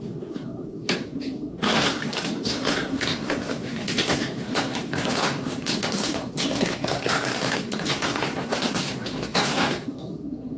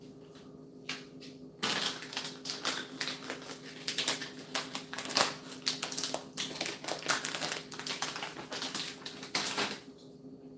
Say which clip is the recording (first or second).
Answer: second